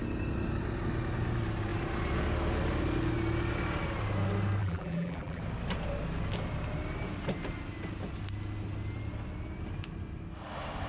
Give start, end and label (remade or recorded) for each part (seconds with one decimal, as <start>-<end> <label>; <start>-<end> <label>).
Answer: 0.0-4.6 recorded; 4.6-5.4 remade; 5.4-10.9 recorded